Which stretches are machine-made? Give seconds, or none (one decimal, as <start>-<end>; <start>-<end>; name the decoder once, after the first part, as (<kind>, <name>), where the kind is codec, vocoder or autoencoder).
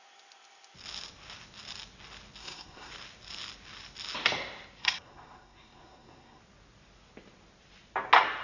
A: 2.4-2.9 (codec, SNAC); 4.8-6.4